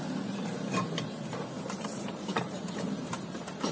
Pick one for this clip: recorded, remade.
remade